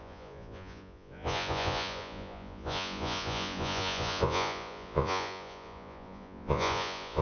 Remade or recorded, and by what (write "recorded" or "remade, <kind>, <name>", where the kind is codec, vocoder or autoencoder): remade, vocoder, Vocos